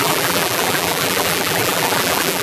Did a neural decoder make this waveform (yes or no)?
yes